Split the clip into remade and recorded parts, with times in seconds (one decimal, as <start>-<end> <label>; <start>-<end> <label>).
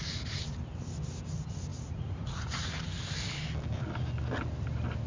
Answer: 0.0-1.7 recorded; 1.7-2.7 remade; 2.7-5.1 recorded